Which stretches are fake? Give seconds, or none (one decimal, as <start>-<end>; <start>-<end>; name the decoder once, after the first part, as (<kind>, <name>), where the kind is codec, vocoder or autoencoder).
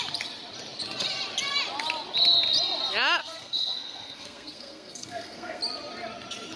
3.2-5.6 (codec, SNAC)